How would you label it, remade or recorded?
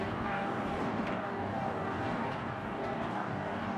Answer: remade